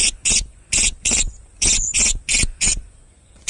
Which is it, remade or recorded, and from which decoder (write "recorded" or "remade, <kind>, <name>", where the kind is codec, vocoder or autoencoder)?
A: remade, vocoder, Vocos